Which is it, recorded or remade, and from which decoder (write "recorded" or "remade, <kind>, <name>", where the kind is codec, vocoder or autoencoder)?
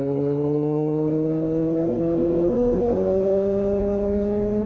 remade, codec, SNAC